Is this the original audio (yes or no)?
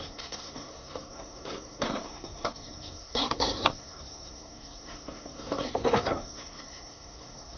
no